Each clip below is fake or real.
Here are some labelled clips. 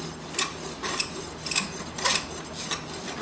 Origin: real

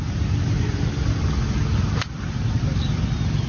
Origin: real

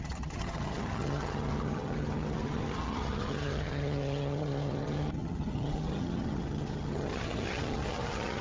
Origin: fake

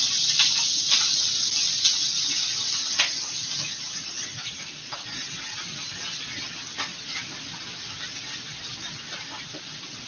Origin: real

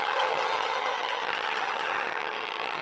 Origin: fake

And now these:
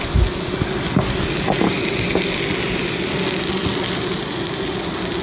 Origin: real